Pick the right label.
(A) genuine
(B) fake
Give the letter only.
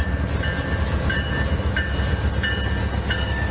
A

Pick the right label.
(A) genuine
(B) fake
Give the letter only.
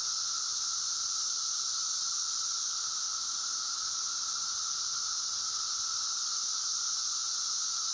A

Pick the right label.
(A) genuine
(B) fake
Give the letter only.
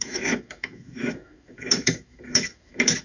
B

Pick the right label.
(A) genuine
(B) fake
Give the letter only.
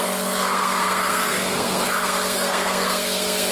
B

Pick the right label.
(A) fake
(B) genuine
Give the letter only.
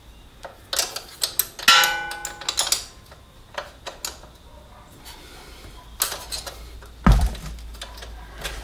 B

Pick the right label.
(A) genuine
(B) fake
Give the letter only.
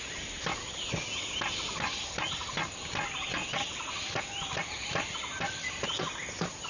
A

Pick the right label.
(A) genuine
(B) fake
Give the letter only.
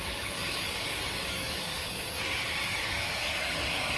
B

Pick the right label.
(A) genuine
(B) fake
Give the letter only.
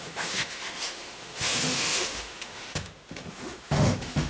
B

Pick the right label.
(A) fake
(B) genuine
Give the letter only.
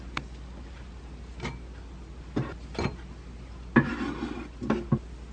B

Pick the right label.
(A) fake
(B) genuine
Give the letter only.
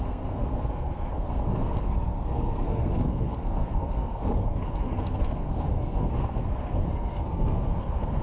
A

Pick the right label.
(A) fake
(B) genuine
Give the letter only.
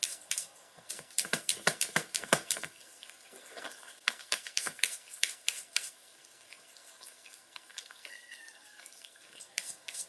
A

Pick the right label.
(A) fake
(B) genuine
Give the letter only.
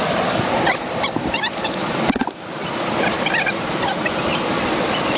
B